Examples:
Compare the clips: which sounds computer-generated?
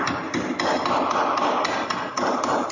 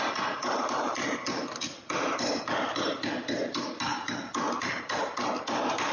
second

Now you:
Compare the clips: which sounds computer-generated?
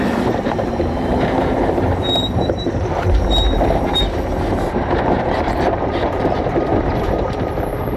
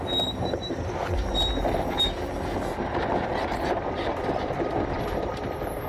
first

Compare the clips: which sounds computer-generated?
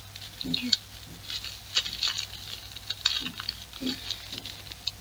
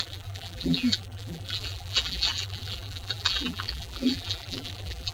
second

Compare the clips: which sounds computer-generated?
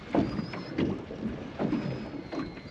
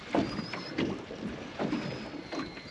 second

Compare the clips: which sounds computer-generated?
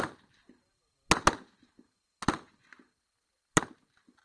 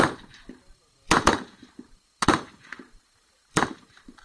second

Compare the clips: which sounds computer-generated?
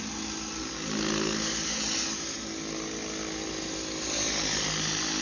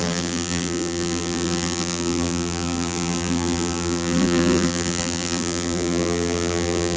second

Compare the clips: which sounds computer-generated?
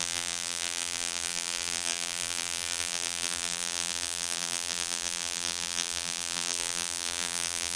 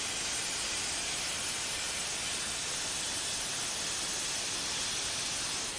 first